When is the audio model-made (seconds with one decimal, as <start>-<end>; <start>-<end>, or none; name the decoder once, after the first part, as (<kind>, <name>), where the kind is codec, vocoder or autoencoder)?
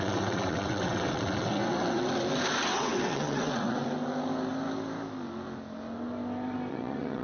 0.0-2.1 (vocoder, WaveNeXt); 2.7-3.8; 6.7-7.2